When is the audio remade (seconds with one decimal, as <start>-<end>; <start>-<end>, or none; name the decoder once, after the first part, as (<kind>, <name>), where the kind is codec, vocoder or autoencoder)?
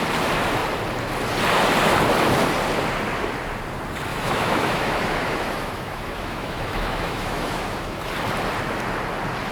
4.1-8.1 (autoencoder, DAC-VAE)